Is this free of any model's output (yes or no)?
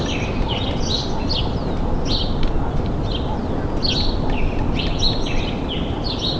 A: yes